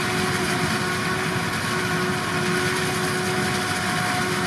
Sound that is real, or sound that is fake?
real